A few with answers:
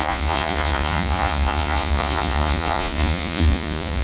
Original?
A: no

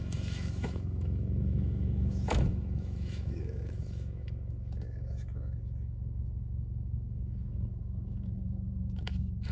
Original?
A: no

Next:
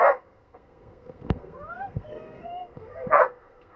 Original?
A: no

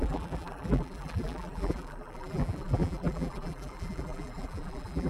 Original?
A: no